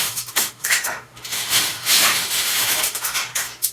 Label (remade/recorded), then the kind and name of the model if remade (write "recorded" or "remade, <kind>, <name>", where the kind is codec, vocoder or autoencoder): remade, autoencoder, DAC-VAE